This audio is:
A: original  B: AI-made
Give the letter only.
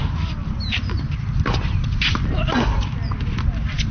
A